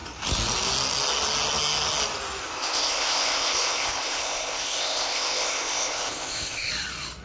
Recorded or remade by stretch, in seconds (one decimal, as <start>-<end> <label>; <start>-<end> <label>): 0.0-2.4 recorded; 2.4-6.7 remade; 6.7-7.2 recorded